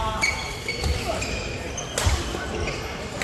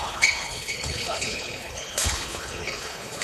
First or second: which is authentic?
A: first